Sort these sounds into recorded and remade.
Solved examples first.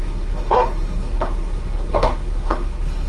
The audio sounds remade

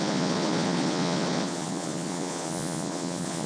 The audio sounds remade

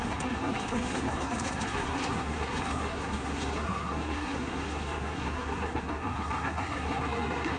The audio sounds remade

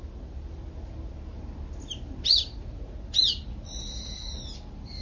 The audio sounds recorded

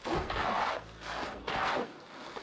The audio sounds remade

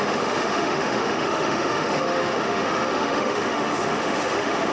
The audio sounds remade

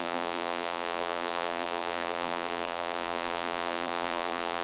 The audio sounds remade